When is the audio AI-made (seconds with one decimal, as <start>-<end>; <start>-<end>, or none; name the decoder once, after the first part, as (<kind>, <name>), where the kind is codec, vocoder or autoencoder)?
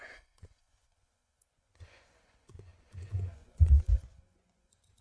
0.0-5.0 (vocoder, Vocos)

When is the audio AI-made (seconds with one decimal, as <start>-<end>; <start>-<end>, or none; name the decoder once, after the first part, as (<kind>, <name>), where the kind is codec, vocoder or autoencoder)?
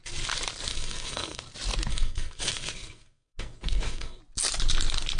0.7-1.4 (codec, SNAC); 1.9-4.2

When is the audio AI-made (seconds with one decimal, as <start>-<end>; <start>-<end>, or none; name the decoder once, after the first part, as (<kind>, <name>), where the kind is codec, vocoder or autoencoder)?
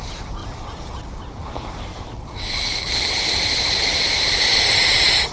0.0-0.4 (vocoder, BigVGAN v2); 1.2-5.3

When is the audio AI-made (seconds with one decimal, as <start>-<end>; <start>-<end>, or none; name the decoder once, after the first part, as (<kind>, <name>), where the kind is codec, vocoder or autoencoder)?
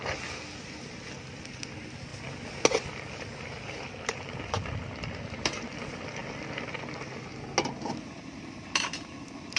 0.0-2.1 (vocoder, BigVGAN v2); 4.5-6.2; 6.7-7.3; 7.8-9.6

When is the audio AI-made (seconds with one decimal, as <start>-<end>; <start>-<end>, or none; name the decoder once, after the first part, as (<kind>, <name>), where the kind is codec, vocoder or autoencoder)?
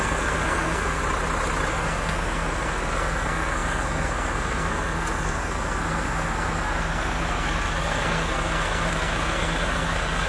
0.0-1.0 (codec, SNAC); 1.7-10.3